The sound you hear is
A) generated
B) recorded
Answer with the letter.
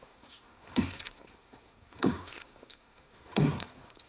A